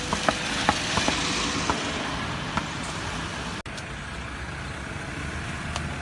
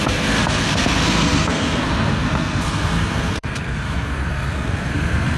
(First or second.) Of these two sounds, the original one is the first